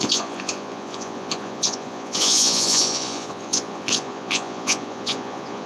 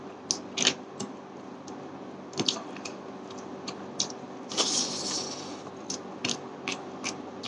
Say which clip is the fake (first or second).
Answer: first